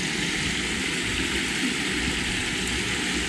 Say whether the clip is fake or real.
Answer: real